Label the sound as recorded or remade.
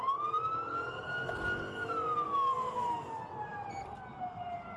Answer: recorded